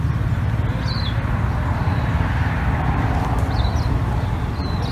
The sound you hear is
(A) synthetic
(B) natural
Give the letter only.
B